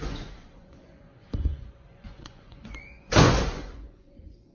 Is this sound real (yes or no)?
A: no